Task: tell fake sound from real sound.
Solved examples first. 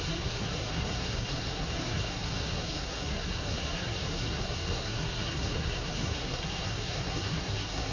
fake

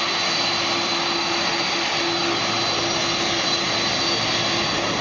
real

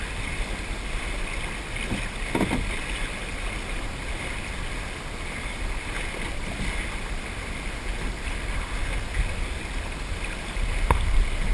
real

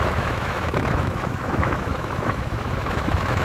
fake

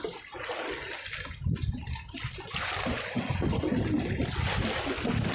real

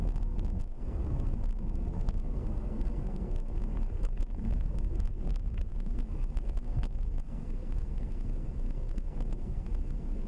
fake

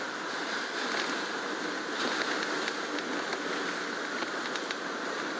real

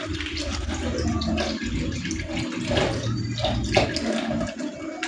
real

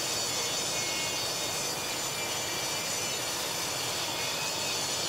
real